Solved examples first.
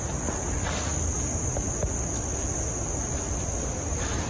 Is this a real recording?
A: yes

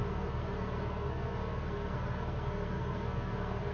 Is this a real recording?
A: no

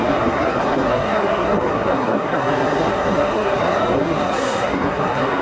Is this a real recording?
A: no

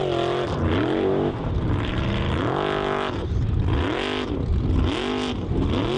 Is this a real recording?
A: yes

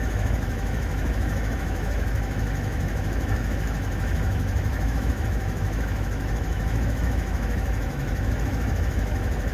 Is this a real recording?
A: no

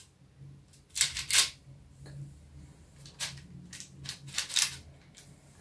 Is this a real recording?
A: yes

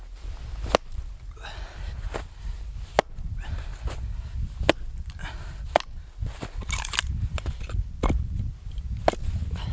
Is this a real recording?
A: yes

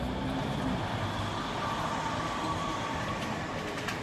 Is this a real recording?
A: yes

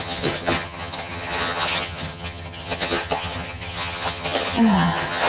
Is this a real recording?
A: no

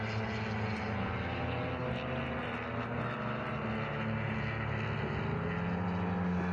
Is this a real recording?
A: yes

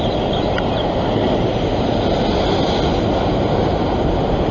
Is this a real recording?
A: yes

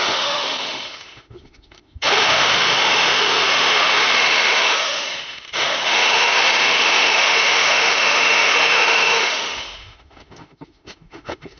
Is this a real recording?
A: no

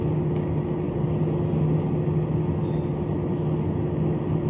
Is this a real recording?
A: yes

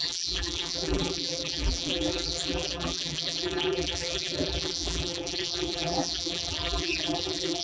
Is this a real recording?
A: no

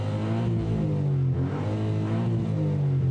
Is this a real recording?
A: yes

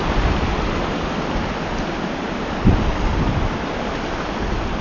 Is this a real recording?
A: no